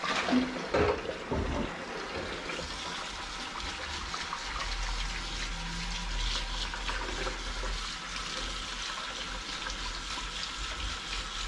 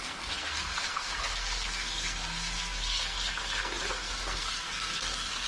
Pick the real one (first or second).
first